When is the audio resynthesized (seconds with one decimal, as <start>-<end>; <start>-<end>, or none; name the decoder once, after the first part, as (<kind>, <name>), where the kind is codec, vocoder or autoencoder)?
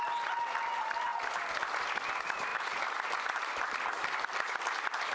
none